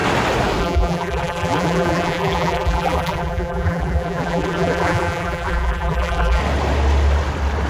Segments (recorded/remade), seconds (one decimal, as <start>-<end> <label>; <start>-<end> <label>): 0.0-0.6 recorded; 0.6-6.4 remade; 6.4-7.7 recorded